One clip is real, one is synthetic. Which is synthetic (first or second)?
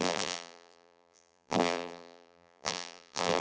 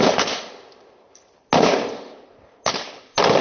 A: first